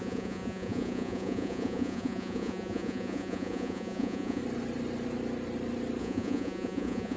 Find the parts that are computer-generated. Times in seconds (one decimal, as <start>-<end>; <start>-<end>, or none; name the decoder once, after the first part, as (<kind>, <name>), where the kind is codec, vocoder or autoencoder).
0.0-4.4 (vocoder, Vocos); 6.0-7.2